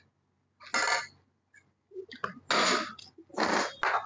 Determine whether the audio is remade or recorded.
recorded